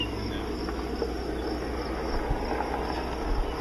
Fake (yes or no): no